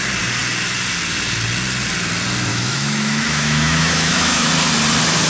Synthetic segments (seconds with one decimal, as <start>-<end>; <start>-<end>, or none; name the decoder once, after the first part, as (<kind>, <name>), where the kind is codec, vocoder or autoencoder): 2.5-4.5 (autoencoder, DAC-VAE)